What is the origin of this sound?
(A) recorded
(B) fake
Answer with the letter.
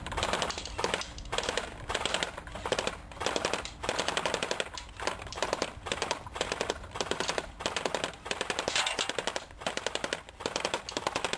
B